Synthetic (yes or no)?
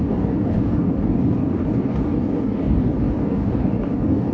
yes